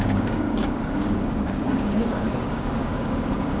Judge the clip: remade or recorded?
remade